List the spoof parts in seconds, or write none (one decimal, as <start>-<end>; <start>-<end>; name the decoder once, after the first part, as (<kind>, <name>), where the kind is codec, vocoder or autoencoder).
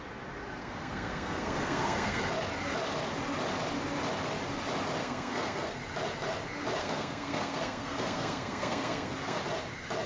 0.6-2.2 (codec, SNAC); 5.0-5.8; 6.8-9.4